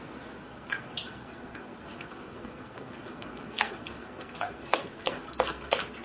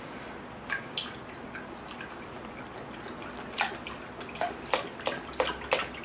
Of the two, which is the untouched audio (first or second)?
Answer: second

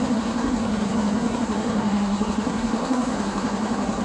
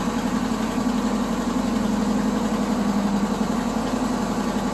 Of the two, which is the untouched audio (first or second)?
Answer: second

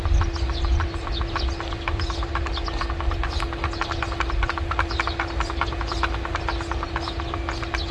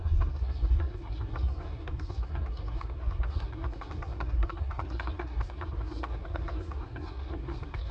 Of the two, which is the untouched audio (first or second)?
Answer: first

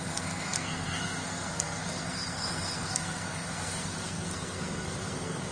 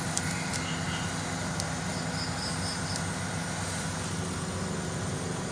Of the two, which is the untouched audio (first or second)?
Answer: second